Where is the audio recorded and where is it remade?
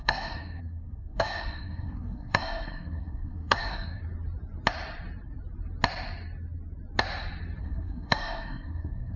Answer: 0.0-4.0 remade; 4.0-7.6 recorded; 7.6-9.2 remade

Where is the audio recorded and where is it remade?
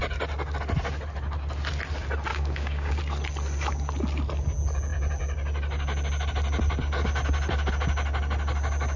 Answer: 0.0-2.3 recorded; 2.3-3.0 remade; 3.0-9.0 recorded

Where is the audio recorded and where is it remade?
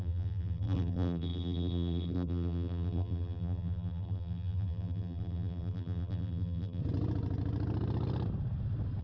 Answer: 0.0-6.8 remade; 6.8-9.0 recorded